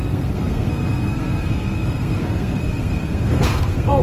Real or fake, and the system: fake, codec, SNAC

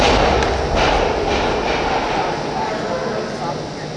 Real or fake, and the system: real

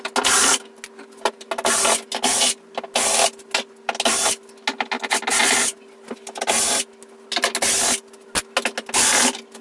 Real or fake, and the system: real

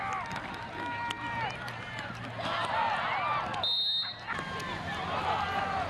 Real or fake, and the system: real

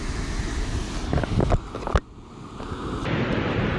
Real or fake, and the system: real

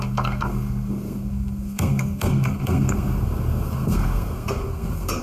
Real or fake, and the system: fake, codec, SNAC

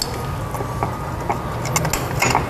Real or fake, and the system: real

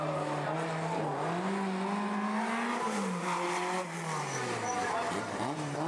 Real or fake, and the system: real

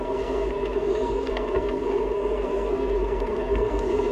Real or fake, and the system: fake, codec, SNAC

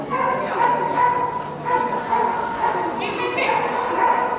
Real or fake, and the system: real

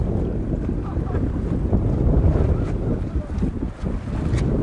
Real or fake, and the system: real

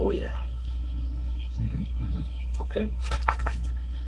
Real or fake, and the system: fake, codec, SNAC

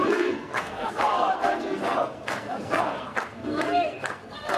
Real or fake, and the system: fake, codec, SNAC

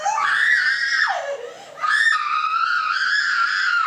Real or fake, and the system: real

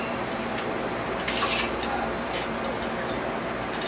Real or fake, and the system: real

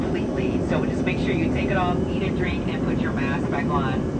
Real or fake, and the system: real